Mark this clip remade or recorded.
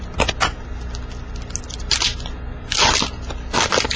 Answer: recorded